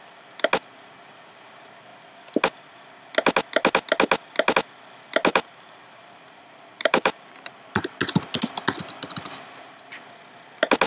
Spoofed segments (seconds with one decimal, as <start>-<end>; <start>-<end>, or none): 5.3-7.9